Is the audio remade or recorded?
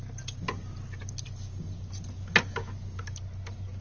recorded